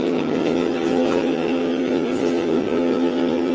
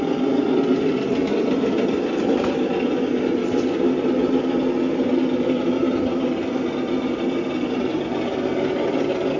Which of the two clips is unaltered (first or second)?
second